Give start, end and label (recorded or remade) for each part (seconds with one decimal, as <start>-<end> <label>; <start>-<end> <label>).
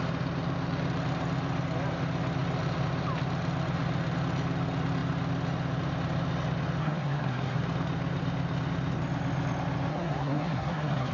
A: 0.0-6.8 recorded; 6.8-7.6 remade; 7.6-9.9 recorded; 9.9-11.1 remade